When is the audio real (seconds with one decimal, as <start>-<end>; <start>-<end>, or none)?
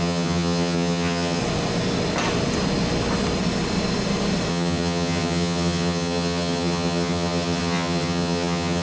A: 1.4-4.5